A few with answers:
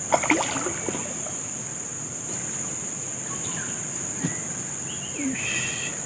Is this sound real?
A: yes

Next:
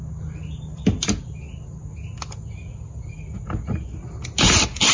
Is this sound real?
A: yes